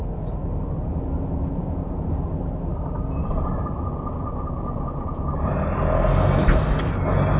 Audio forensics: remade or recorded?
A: recorded